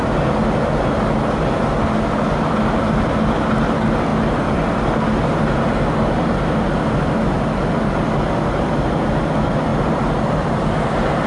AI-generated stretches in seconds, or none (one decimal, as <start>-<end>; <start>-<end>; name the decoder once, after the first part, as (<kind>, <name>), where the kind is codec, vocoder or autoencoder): 4.1-4.8 (vocoder, BigVGAN v2); 5.2-6.3; 9.7-10.6